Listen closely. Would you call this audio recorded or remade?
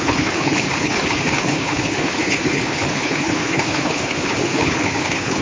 remade